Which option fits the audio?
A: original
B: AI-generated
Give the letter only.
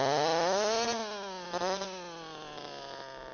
A